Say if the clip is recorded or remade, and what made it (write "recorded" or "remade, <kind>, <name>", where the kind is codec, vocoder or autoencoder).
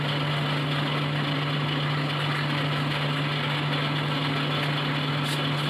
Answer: recorded